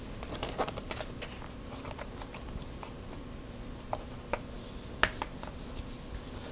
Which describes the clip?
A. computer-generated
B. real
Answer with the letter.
B